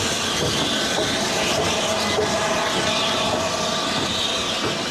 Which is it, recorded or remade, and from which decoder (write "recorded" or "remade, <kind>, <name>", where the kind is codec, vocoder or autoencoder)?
recorded